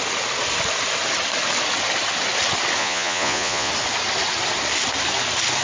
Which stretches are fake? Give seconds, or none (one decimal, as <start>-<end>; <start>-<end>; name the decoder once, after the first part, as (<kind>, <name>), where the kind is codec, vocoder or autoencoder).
2.8-3.7 (vocoder, Vocos)